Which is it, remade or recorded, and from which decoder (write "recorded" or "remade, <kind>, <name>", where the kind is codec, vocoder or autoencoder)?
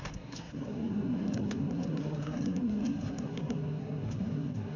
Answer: remade, codec, SNAC